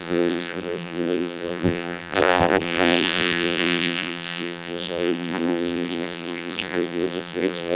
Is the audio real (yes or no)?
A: no